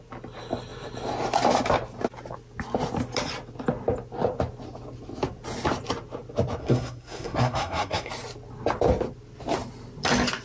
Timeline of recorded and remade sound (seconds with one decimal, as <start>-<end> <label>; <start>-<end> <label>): 0.0-6.6 recorded; 6.6-8.1 remade; 8.1-10.4 recorded